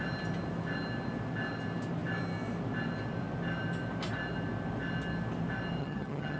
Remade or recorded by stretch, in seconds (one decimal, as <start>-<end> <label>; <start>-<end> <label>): 0.0-5.8 recorded; 5.8-6.4 remade

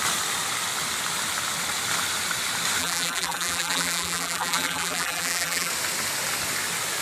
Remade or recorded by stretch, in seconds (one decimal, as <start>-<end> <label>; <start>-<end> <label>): 0.0-2.8 recorded; 2.8-5.7 remade; 5.7-7.0 recorded

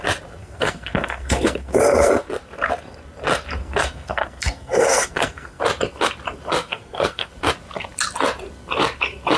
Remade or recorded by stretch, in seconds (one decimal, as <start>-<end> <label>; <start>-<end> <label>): 0.0-0.4 recorded; 0.4-2.1 remade; 2.1-3.6 recorded; 3.6-5.6 remade; 5.6-6.6 recorded; 6.6-7.3 remade; 7.3-9.4 recorded

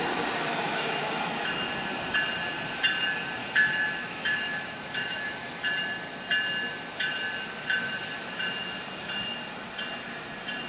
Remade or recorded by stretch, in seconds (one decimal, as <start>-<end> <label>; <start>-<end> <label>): 0.0-0.5 recorded; 0.5-1.3 remade; 1.3-3.4 recorded; 3.4-5.7 remade; 5.7-10.7 recorded

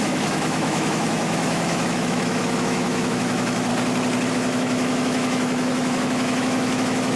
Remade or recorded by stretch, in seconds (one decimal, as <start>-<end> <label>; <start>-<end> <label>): 0.0-3.7 remade; 3.7-4.3 recorded; 4.3-7.2 remade

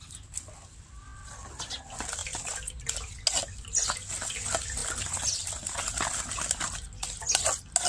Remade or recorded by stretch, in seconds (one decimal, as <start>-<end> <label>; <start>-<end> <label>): 0.0-7.9 recorded

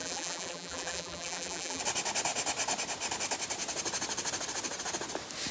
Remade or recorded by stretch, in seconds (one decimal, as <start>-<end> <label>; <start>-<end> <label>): 0.0-1.8 remade; 1.8-5.5 recorded

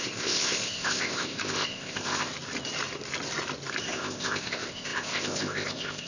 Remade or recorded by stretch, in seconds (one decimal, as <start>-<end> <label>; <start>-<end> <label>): 0.0-2.3 remade; 2.3-3.8 recorded; 3.8-6.1 remade